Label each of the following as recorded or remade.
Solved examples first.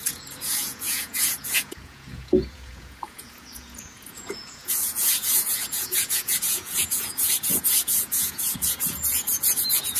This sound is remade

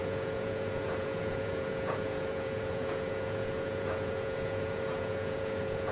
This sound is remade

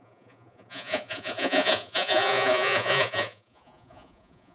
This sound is remade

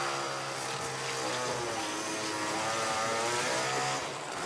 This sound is recorded